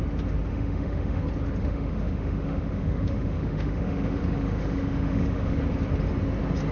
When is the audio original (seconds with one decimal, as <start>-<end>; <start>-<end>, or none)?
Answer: 0.0-0.5; 1.2-1.6; 5.6-6.7